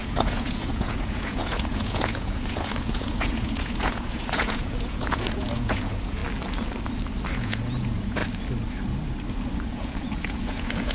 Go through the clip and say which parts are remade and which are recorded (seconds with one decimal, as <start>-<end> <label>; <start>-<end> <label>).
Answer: 0.0-6.2 remade; 6.2-7.3 recorded; 7.3-8.2 remade; 8.2-9.7 recorded; 9.7-10.9 remade